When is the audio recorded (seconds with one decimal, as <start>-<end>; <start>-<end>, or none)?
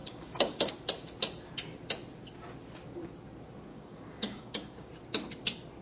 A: 0.7-3.7; 4.9-5.8